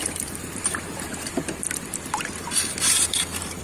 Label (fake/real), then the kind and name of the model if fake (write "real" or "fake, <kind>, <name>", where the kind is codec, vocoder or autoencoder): fake, vocoder, BigVGAN v2